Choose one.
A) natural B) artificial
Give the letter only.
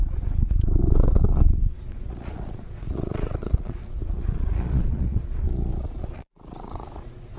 B